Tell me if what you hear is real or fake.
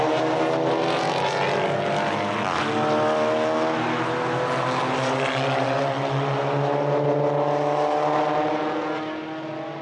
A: real